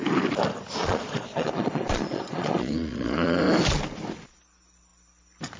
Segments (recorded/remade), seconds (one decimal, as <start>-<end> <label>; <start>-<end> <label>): 0.0-0.8 recorded; 0.8-3.4 remade; 3.4-5.6 recorded